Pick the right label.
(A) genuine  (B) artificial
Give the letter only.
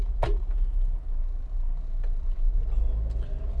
A